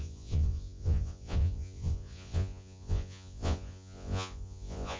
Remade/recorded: remade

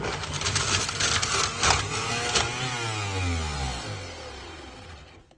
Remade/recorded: recorded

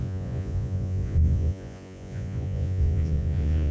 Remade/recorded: remade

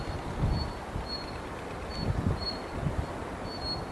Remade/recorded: recorded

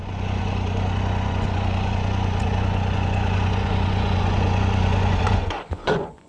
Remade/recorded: remade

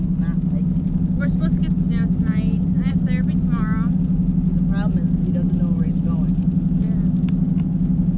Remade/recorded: recorded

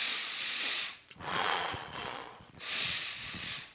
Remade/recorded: remade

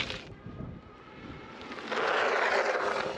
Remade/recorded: recorded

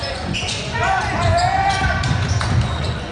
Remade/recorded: remade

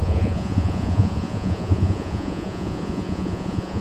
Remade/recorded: remade